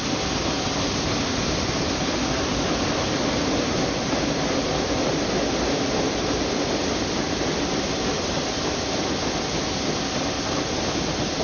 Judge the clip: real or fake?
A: real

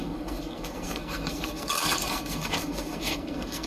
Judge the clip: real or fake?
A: fake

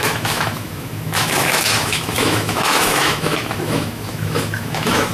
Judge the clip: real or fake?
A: fake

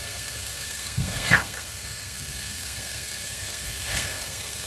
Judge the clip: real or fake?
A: fake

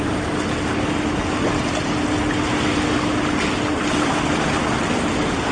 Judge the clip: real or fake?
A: real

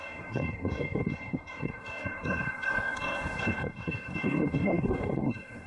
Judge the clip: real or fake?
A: fake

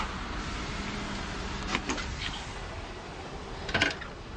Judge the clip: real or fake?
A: real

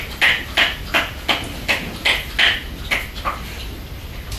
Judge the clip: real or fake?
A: real